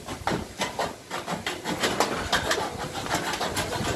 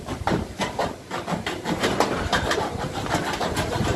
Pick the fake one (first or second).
second